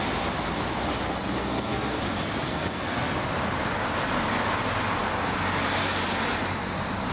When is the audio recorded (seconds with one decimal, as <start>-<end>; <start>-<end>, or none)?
0.0-1.4; 2.0-2.5; 3.2-7.1